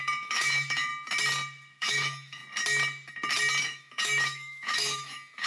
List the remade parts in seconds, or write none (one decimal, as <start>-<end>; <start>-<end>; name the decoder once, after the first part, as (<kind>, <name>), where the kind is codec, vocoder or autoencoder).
0.0-0.9 (autoencoder, DAC-VAE); 1.8-2.4; 3.6-5.5